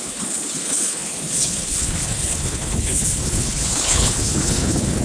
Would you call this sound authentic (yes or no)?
no